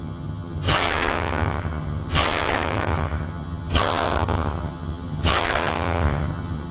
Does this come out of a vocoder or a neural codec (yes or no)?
yes